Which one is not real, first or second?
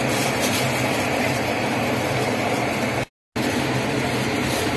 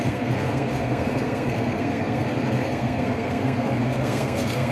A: second